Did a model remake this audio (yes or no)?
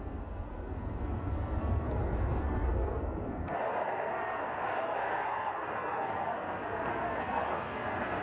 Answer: yes